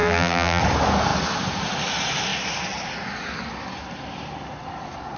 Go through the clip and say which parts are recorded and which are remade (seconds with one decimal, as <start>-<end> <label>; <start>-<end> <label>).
0.0-0.6 remade; 0.6-5.2 recorded